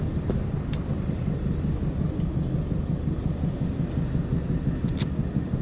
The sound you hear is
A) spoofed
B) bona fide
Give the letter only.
B